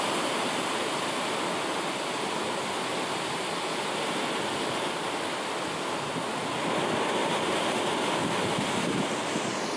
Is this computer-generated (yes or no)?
no